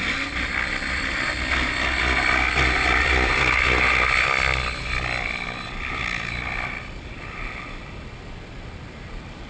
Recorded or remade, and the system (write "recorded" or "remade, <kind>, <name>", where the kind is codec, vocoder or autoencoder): recorded